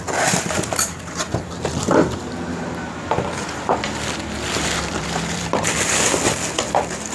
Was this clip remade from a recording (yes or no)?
yes